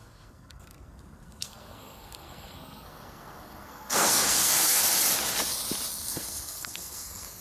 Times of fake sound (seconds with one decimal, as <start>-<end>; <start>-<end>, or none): 0.0-4.9; 5.9-7.4